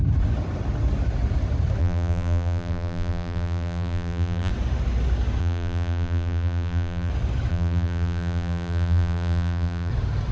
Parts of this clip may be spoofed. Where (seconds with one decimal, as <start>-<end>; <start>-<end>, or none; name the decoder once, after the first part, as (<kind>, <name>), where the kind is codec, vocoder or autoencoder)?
1.8-4.5 (vocoder, BigVGAN v2); 5.4-7.1; 7.5-9.9